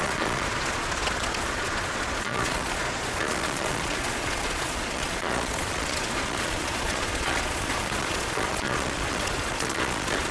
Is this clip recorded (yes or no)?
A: no